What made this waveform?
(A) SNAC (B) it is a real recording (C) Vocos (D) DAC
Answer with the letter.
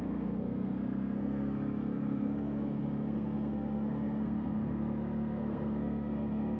A